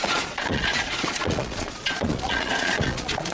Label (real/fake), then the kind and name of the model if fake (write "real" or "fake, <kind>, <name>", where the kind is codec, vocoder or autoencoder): fake, vocoder, Vocos